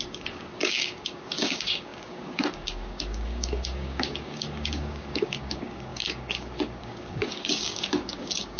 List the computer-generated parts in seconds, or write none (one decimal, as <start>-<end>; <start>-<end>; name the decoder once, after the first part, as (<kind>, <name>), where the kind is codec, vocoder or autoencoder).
0.0-8.6 (codec, DAC)